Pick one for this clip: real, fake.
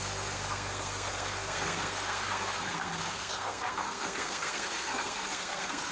fake